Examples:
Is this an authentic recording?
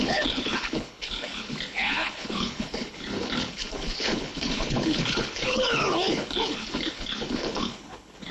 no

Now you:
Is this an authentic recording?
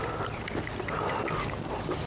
yes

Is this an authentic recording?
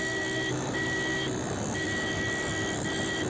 yes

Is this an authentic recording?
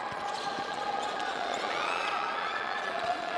no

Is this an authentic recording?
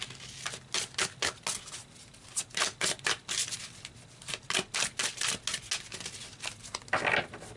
yes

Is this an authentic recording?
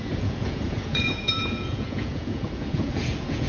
no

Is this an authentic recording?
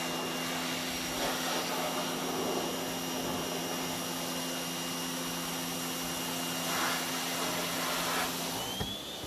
yes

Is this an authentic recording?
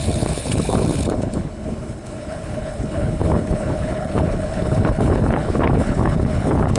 no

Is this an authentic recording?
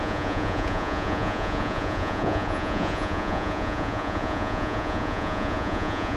no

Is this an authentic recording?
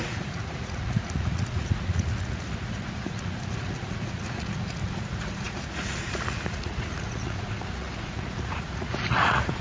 no